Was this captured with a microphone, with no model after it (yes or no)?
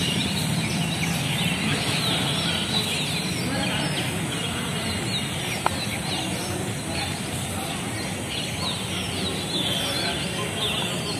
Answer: yes